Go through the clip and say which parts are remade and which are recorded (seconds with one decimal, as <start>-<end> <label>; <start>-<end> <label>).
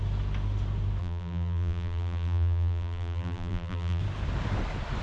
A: 0.0-1.0 recorded; 1.0-4.0 remade; 4.0-5.0 recorded